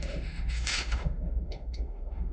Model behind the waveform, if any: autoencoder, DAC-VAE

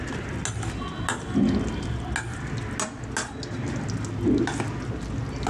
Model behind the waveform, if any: none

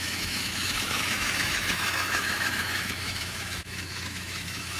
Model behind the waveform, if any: autoencoder, DAC-VAE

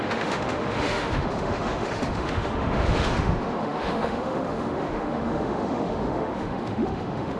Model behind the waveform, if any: autoencoder, DAC-VAE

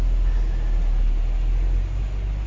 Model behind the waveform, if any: none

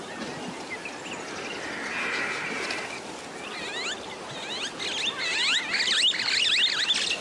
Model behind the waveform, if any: none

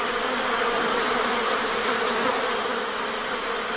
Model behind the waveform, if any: none